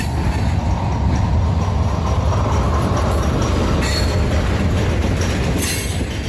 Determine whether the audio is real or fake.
real